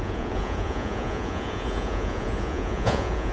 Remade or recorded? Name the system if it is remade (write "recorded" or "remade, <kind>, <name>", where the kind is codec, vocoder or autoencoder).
remade, vocoder, Vocos